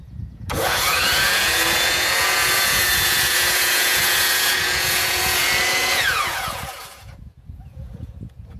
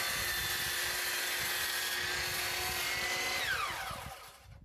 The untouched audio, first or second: second